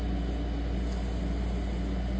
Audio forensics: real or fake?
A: real